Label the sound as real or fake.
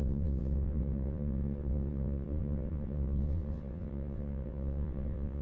fake